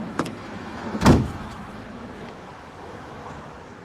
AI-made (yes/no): yes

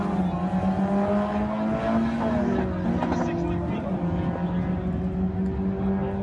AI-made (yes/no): no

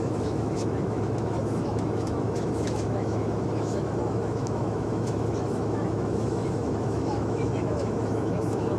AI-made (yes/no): yes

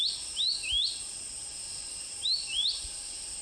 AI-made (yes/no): no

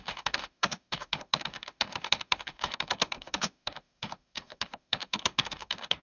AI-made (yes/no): yes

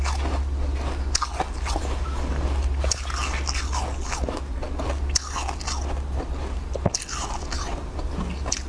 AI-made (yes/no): no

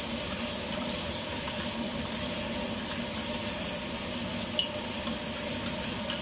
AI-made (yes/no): no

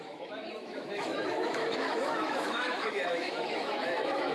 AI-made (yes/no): yes